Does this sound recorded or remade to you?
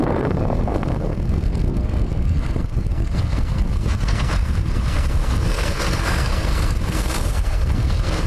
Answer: remade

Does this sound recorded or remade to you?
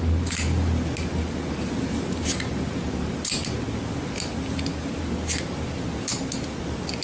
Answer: recorded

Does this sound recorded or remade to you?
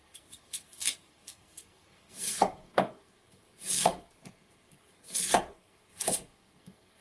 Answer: remade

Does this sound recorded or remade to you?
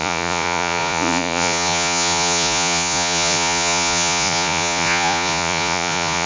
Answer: remade